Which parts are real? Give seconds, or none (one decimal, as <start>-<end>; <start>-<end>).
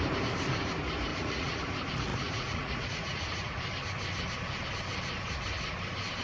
0.0-1.1; 1.6-2.1; 3.6-6.2